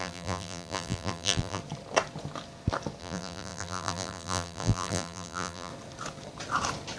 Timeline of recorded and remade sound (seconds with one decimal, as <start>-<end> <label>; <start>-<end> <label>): 0.0-1.6 remade; 1.6-3.0 recorded; 3.0-5.7 remade; 5.7-7.0 recorded